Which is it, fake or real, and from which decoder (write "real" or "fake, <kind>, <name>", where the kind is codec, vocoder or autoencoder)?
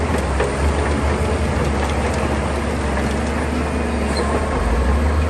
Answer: real